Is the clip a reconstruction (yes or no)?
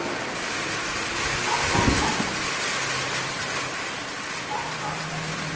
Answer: no